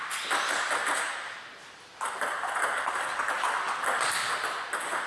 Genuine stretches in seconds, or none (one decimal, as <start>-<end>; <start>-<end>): 0.0-5.1